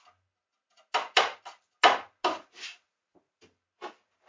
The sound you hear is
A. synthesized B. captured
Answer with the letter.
B